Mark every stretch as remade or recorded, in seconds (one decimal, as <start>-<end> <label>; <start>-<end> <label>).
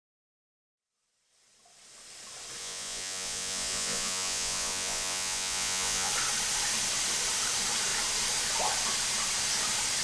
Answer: 0.0-2.6 recorded; 2.6-6.1 remade; 6.1-10.0 recorded